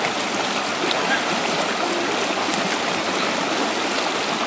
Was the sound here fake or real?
real